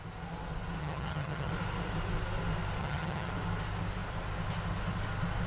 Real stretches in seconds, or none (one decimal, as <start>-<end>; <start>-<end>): 0.0-0.8; 1.5-2.8; 3.3-5.5